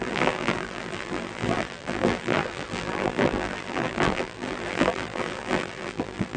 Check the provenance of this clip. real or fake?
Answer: fake